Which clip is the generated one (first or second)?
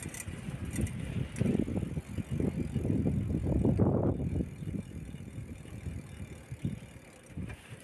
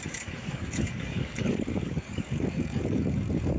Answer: second